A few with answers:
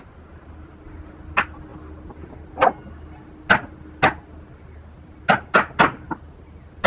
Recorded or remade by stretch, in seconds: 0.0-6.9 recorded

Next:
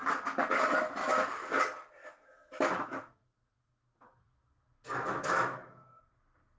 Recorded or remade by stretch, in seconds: 0.0-1.0 recorded; 1.0-1.6 remade; 1.6-2.0 recorded; 2.0-6.0 remade; 6.0-6.6 recorded

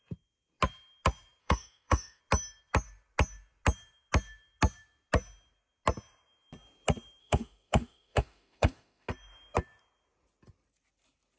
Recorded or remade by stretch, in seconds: 0.0-1.4 recorded; 1.4-2.2 remade; 2.2-7.2 recorded; 7.2-9.1 remade; 9.1-11.4 recorded